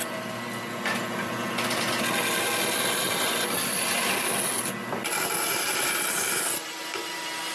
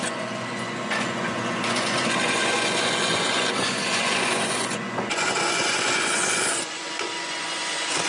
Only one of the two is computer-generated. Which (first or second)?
second